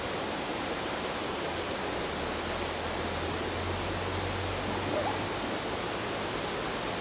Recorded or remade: recorded